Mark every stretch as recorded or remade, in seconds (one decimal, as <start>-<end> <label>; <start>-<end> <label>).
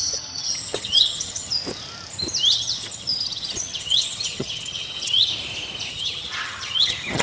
0.0-1.5 remade; 1.5-2.5 recorded; 2.5-5.3 remade; 5.3-5.9 recorded; 5.9-7.2 remade